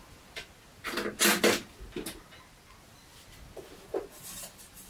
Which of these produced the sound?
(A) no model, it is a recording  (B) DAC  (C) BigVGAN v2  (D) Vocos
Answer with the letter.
A